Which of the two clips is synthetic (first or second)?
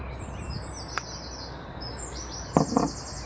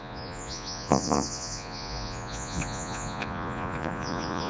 second